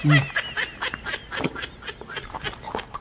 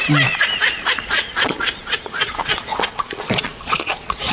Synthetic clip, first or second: second